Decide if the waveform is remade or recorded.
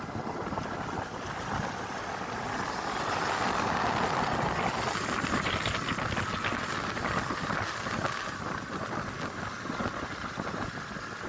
recorded